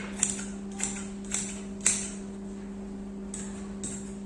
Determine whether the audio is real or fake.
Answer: real